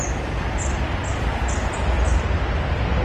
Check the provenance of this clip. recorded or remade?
recorded